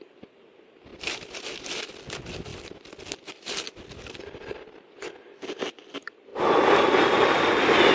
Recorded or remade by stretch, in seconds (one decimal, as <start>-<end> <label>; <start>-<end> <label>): 0.0-0.9 recorded; 0.9-1.9 remade; 1.9-7.9 recorded